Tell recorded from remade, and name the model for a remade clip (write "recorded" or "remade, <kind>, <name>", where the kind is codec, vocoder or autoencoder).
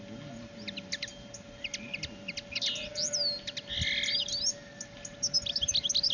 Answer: recorded